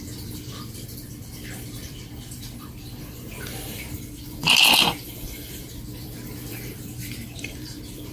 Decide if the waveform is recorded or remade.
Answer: remade